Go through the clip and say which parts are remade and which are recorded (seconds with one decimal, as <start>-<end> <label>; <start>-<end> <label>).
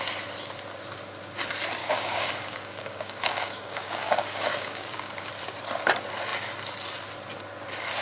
0.0-1.8 recorded; 1.8-5.3 remade; 5.3-8.0 recorded